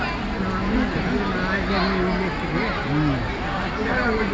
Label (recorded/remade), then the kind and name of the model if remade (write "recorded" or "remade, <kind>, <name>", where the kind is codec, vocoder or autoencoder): recorded